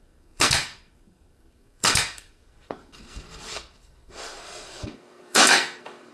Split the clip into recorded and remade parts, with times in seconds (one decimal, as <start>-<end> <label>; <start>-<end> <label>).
0.0-6.1 remade